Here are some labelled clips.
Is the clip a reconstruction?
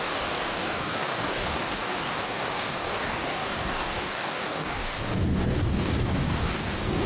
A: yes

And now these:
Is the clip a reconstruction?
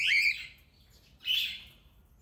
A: no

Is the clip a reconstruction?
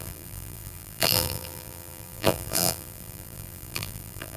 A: yes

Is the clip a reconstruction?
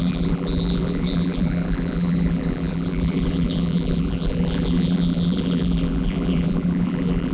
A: yes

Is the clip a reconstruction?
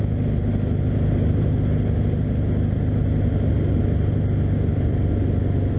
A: no